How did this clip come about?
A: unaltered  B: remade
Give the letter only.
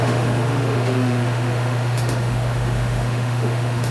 B